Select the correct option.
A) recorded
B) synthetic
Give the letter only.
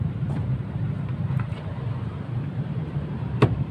B